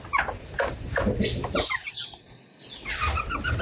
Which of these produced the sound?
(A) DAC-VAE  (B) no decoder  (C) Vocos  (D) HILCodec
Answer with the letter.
B